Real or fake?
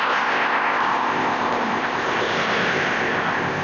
fake